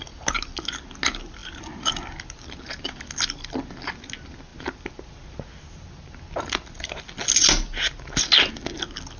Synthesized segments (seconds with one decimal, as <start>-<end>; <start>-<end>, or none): none